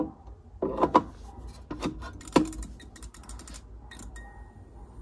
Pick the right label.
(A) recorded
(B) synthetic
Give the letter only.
A